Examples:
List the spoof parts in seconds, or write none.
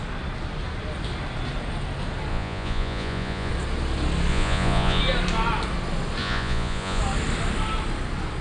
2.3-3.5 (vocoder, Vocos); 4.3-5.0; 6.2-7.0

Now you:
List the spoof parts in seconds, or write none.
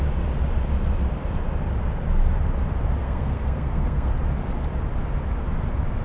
3.0-4.1 (codec, SNAC)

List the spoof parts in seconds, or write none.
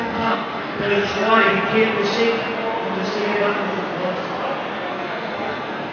0.0-1.4 (codec, SNAC); 4.9-5.9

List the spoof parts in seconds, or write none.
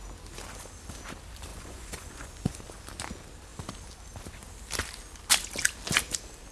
1.5-2.6 (vocoder, Vocos)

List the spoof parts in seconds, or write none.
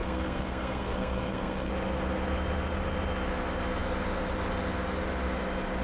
0.0-1.7 (codec, SNAC)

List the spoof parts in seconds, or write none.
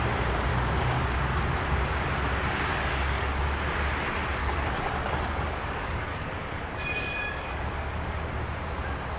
0.5-1.4 (codec, DAC); 2.7-3.4; 4.4-8.2